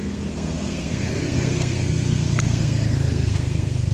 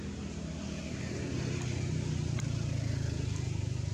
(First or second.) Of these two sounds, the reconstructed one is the first